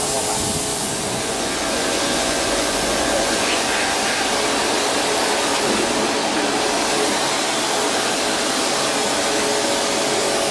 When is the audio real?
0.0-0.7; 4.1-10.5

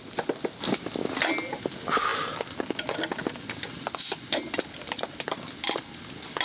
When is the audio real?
0.0-6.4

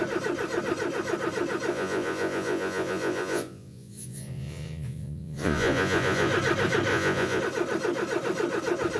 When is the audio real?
0.0-1.7; 6.3-6.9; 7.4-9.0